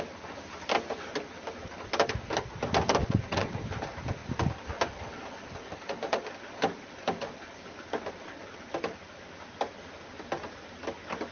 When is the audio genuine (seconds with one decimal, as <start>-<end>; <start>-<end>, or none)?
0.0-3.0; 3.6-11.3